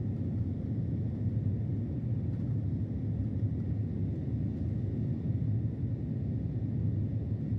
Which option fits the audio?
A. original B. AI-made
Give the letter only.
A